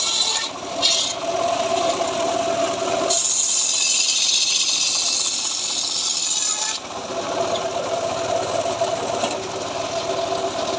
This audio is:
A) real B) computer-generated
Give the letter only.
A